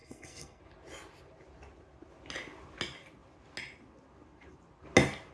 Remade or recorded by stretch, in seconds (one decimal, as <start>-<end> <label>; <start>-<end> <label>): 0.0-0.6 remade; 0.6-5.3 recorded